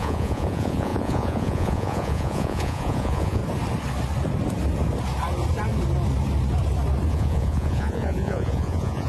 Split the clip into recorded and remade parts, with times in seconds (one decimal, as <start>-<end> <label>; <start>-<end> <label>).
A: 0.0-3.4 remade; 3.4-7.1 recorded; 7.1-9.1 remade